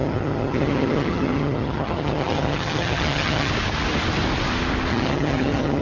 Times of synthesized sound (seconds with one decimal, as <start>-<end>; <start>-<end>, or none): 0.0-3.5; 4.9-5.8